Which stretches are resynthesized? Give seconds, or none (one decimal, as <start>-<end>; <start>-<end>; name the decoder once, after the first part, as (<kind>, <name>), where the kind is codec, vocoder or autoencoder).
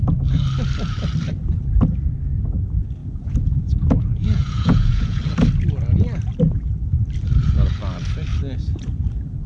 3.0-5.2 (vocoder, Vocos)